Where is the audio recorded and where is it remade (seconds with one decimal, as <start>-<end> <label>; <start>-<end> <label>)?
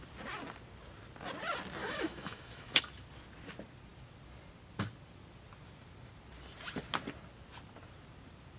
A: 0.0-1.8 recorded; 1.8-2.8 remade; 2.8-8.6 recorded